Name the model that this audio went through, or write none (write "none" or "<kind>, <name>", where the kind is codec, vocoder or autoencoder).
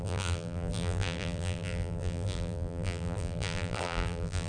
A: vocoder, BigVGAN v2